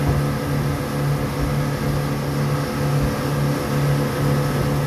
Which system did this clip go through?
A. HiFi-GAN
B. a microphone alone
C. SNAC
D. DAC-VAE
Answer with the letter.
B